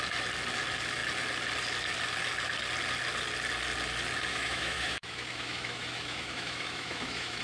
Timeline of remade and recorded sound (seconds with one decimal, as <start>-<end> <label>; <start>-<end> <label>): 0.0-4.3 recorded; 4.3-7.4 remade